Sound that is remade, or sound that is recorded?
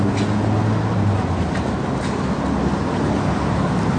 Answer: recorded